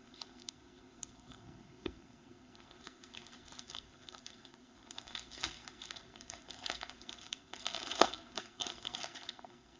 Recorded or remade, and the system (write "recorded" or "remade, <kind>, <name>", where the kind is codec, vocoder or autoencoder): remade, codec, SNAC